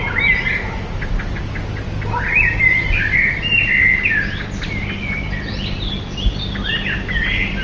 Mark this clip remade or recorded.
recorded